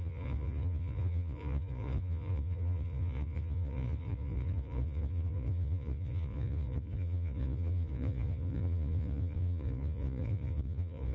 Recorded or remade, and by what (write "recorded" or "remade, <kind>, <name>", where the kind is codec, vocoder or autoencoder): remade, vocoder, Vocos